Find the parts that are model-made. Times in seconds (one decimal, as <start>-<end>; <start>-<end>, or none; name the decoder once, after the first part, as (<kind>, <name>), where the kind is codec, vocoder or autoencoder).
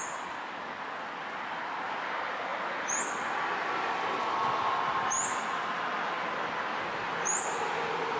none